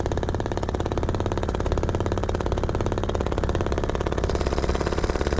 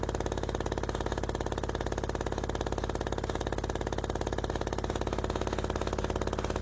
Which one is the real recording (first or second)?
second